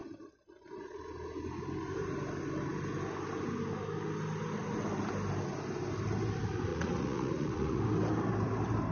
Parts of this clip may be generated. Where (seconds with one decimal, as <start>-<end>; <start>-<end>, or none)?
6.7-7.8